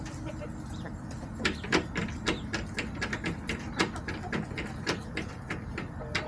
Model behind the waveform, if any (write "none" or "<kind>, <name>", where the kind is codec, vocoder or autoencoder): none